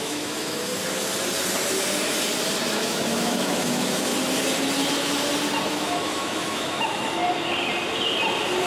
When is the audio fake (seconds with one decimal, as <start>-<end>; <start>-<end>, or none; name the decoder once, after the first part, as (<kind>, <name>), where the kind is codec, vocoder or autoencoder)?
0.0-0.7 (autoencoder, DAC-VAE); 2.7-4.1; 5.7-7.2